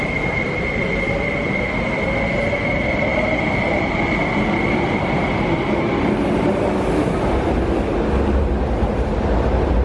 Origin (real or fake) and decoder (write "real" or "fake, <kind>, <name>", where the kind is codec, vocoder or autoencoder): real